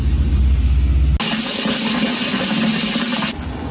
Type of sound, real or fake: real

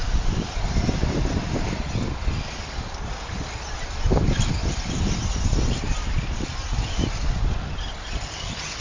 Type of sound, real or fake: real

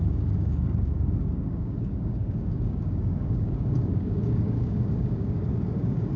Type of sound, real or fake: fake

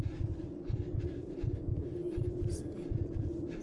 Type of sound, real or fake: real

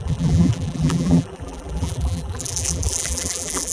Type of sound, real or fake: fake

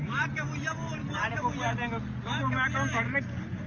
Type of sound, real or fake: real